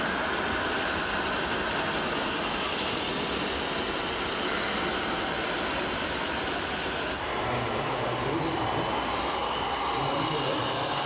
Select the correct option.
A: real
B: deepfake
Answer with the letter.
A